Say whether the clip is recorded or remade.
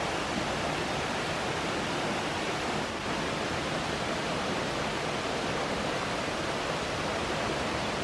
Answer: remade